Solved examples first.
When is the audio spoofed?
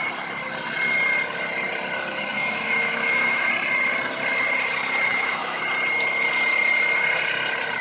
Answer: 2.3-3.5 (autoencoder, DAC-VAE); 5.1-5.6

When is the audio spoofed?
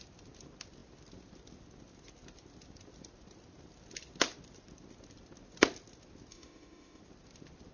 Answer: 6.3-7.0 (autoencoder, DAC-VAE)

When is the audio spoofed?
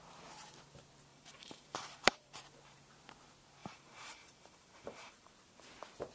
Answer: 1.1-2.4 (vocoder, BigVGAN v2); 3.6-5.3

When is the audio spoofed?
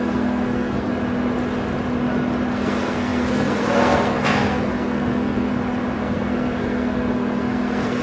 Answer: 0.0-0.9 (codec, SNAC); 2.5-5.5; 6.0-8.0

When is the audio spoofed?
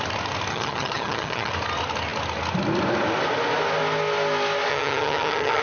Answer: 0.5-1.5 (vocoder, HiFi-GAN); 4.7-5.6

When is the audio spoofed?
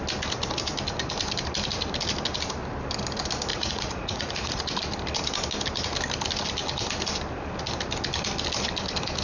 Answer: 3.5-4.8 (vocoder, Vocos)